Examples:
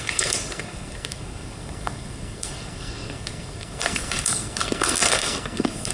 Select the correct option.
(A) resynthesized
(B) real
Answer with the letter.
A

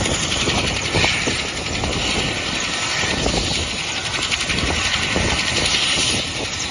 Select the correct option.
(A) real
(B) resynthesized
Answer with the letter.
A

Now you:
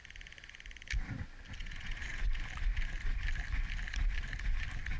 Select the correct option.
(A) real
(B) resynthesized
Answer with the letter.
A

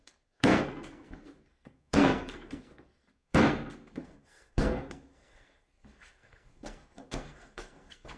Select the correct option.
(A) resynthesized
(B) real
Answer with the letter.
A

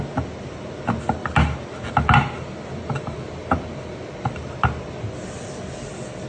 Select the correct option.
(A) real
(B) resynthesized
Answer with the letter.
A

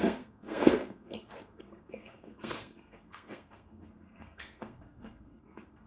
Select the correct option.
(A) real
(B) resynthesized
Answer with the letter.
B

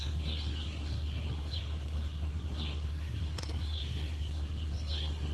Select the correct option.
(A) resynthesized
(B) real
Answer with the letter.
A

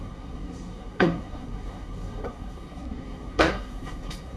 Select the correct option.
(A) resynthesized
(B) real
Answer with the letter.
A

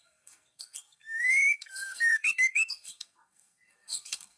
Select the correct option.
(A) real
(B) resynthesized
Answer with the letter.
B